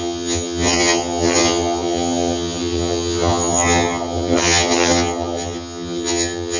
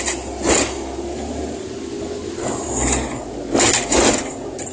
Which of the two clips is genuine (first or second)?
second